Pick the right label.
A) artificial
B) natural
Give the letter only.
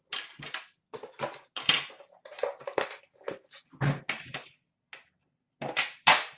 B